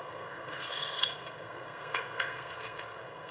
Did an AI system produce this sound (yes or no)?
yes